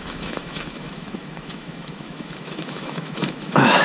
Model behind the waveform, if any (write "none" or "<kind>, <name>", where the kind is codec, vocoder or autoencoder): autoencoder, DAC-VAE